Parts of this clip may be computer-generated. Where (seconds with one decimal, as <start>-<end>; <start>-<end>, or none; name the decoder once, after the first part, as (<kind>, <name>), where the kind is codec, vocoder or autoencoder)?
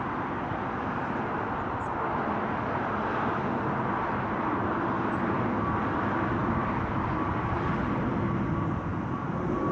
none